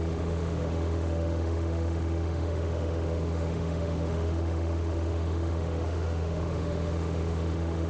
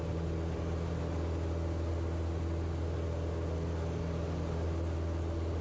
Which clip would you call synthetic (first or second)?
first